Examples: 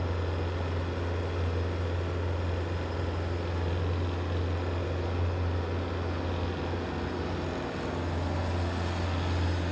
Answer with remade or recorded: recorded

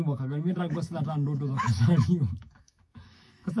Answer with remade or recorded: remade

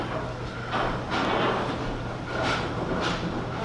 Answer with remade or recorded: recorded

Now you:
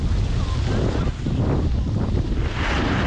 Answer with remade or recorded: recorded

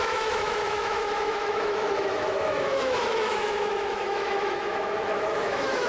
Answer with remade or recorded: remade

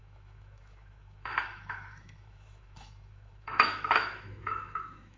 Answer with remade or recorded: remade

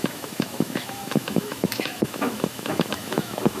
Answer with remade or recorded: remade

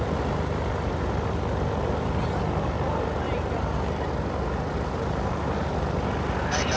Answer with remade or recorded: recorded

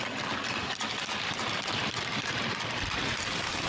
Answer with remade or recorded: recorded